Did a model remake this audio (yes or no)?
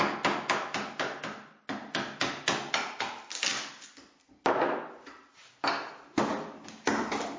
no